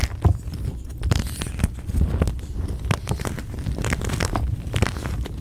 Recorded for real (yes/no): no